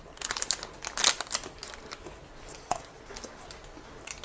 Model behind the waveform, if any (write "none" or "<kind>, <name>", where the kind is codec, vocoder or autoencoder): none